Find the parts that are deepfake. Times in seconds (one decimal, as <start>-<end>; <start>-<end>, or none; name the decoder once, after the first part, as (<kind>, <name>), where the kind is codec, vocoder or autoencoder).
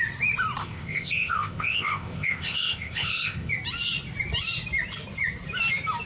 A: 0.6-3.5 (codec, ZipCodec)